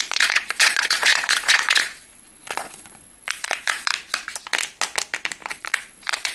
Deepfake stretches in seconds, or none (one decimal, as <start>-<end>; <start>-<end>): 0.0-3.9; 5.5-6.3